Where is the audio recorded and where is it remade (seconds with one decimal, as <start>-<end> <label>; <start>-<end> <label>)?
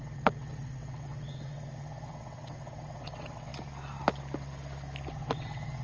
0.0-3.5 remade; 3.5-5.1 recorded; 5.1-5.8 remade